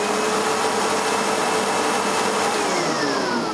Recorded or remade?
recorded